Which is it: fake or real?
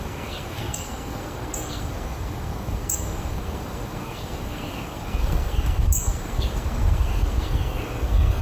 fake